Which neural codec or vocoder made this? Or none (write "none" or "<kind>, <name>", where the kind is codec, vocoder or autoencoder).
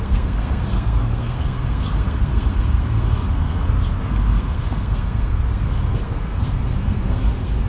codec, SNAC